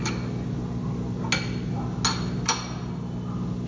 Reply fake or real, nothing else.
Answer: real